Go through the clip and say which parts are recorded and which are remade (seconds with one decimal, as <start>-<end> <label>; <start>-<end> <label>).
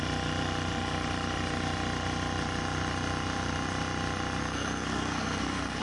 0.0-4.4 recorded; 4.4-5.8 remade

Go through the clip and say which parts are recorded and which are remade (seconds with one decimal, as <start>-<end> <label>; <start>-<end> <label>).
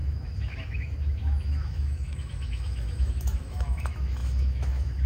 0.0-5.1 remade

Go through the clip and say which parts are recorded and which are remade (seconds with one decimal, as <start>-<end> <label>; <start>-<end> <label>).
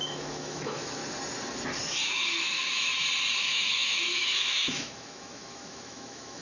0.0-1.0 remade; 1.0-2.1 recorded; 2.1-2.9 remade; 2.9-3.4 recorded; 3.4-6.4 remade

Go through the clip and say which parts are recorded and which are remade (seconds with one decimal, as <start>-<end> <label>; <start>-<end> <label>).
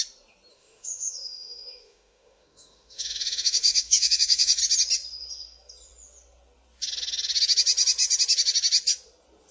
0.0-0.5 recorded; 0.5-4.6 remade; 4.6-9.5 recorded